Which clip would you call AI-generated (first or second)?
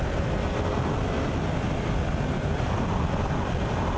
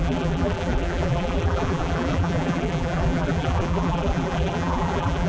second